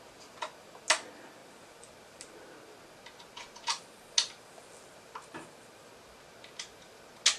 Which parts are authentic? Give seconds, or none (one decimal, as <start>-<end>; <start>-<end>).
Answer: 0.0-7.4